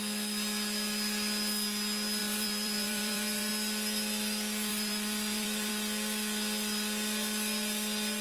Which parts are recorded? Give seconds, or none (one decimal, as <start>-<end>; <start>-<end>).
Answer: 0.0-2.2; 3.5-4.7; 5.7-8.2